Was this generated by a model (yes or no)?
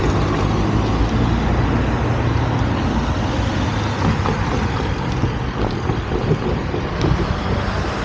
no